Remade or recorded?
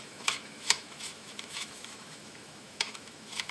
remade